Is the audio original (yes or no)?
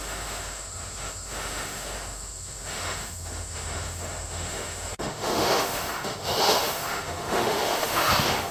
no